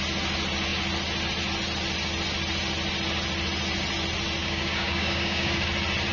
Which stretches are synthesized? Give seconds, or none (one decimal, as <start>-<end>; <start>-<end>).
4.4-5.6